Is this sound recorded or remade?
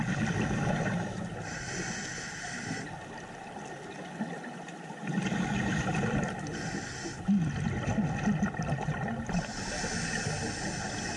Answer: recorded